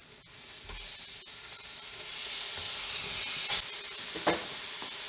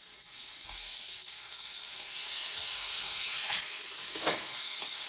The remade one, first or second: second